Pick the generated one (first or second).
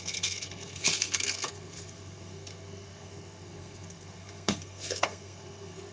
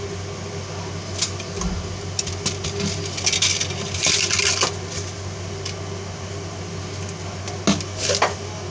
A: first